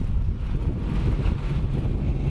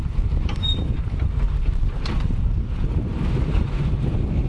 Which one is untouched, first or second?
first